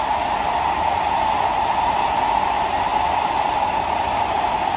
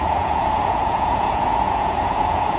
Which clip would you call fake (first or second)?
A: second